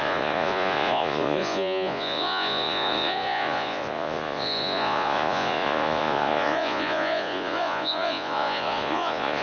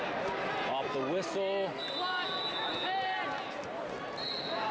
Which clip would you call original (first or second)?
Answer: second